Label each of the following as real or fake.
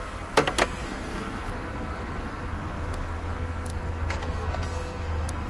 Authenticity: fake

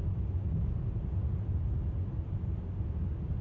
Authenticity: real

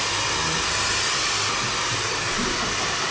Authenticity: real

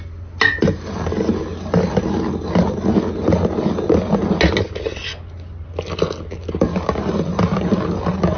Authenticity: real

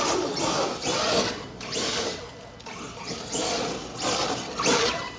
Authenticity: real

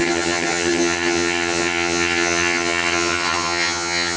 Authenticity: fake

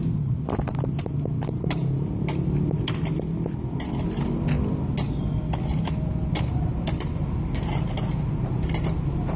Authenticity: real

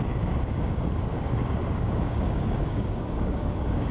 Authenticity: fake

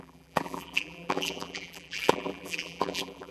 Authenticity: fake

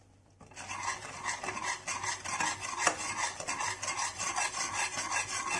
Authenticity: real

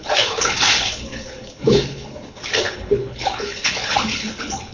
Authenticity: fake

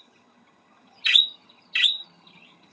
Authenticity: fake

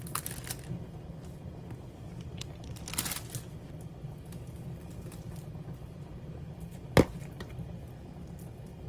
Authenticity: real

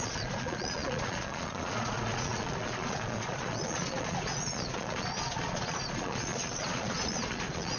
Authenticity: fake